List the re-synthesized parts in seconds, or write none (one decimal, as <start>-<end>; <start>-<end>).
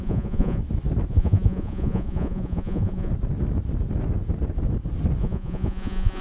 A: 0.0-0.6; 1.1-3.1; 5.2-6.2